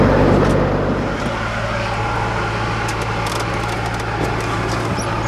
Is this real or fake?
real